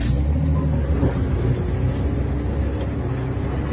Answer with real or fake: real